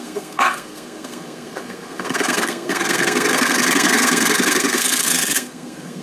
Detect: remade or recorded remade